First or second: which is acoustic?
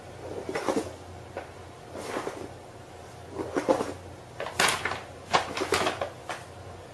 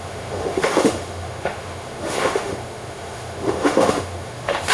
first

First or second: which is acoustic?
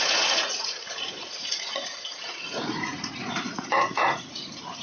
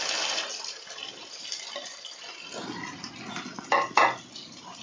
second